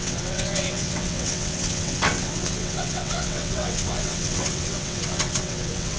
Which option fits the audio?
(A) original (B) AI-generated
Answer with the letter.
B